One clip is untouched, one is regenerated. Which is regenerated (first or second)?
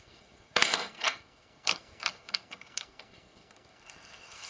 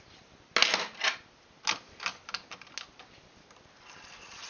first